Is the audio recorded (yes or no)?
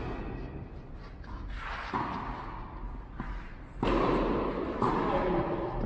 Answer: yes